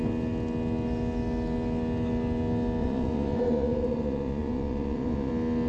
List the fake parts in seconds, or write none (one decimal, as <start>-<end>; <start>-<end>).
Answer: 2.8-5.3